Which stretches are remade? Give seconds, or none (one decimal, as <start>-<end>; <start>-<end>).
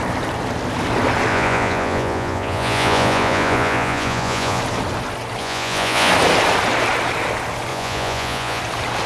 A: 1.3-4.6; 5.4-6.1; 7.7-8.6